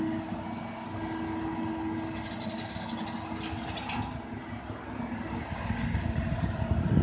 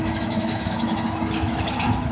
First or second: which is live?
first